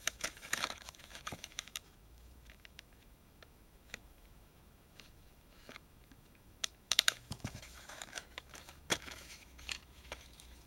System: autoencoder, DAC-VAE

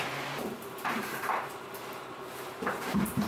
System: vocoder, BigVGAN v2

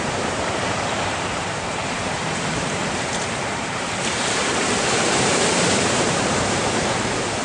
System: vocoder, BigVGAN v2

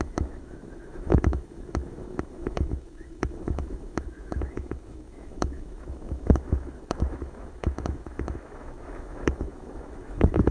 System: autoencoder, DAC-VAE